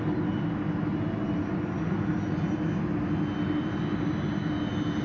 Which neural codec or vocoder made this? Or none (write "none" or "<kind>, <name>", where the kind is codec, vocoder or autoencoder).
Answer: none